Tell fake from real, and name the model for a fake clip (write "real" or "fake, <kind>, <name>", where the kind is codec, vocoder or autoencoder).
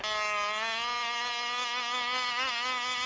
real